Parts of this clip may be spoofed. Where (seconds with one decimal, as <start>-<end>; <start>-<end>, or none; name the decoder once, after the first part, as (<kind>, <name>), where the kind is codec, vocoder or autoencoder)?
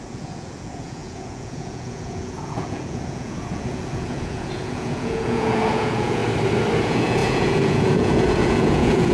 0.0-6.2 (vocoder, Vocos); 6.8-9.1